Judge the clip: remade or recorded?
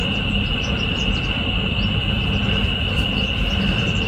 remade